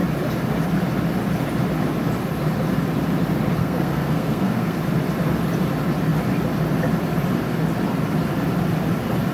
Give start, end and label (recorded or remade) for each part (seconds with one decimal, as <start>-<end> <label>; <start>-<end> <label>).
0.0-3.6 recorded; 3.6-4.8 remade; 4.8-9.3 recorded